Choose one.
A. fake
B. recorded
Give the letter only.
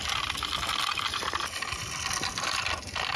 B